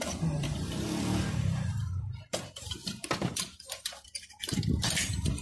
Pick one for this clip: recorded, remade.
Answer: remade